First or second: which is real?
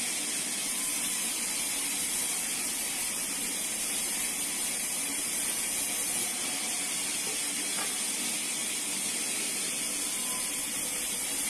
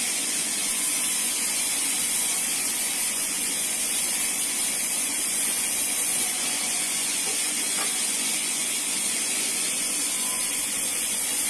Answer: first